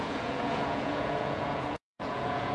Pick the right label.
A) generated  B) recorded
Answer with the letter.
A